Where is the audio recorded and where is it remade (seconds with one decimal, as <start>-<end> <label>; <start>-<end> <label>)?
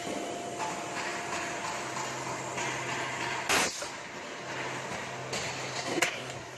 0.0-5.7 recorded; 5.7-6.6 remade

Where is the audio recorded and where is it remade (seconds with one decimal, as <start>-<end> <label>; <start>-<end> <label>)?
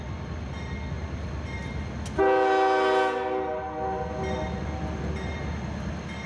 0.0-6.3 recorded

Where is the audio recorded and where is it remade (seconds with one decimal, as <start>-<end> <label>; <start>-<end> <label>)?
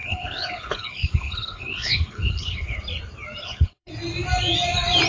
0.0-2.8 remade; 2.8-3.4 recorded; 3.4-3.9 remade; 3.9-5.1 recorded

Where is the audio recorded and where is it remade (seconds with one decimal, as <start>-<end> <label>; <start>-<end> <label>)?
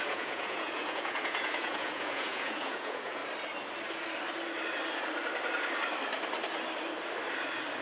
0.0-3.2 remade; 3.2-7.8 recorded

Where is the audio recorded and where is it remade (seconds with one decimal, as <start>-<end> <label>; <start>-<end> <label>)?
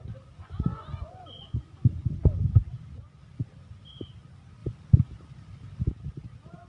0.0-0.4 recorded; 0.4-2.2 remade; 2.2-6.7 recorded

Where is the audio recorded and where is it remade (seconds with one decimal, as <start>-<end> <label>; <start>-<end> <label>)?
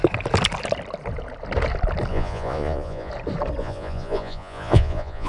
0.0-2.1 recorded; 2.1-3.1 remade; 3.1-3.6 recorded; 3.6-5.3 remade